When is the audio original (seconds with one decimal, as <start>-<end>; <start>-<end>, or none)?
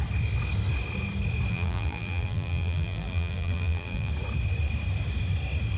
0.0-1.5; 4.1-5.8